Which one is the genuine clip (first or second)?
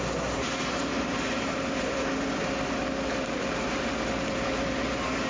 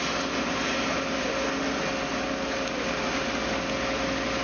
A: second